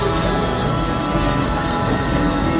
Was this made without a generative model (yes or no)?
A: no